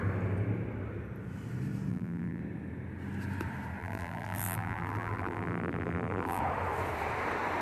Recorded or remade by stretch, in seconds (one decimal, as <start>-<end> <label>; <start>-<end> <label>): 0.0-1.9 recorded; 1.9-2.4 remade; 2.4-3.8 recorded; 3.8-6.4 remade; 6.4-7.6 recorded